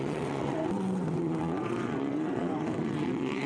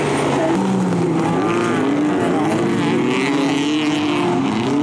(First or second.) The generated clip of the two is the first